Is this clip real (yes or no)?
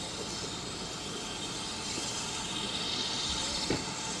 yes